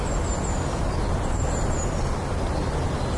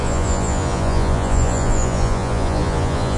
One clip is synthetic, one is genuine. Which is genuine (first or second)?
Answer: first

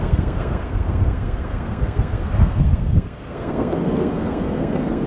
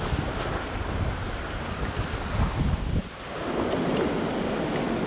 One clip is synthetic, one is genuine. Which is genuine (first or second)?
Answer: second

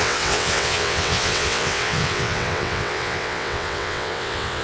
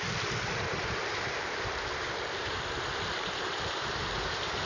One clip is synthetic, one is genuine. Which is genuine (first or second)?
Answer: second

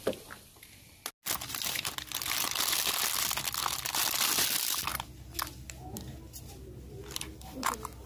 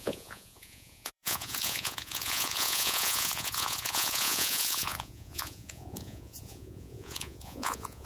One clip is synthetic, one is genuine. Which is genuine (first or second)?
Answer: first